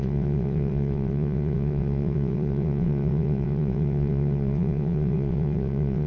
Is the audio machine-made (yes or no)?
yes